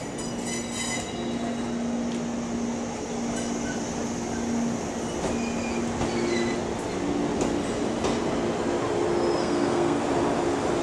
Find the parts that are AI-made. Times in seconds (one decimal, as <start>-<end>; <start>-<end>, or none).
9.4-10.0